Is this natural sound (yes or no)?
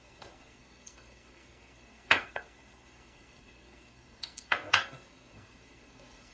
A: no